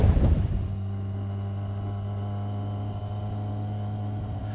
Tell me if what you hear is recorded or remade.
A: recorded